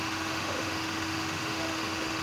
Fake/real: fake